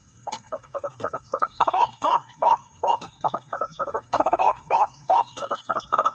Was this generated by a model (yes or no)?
yes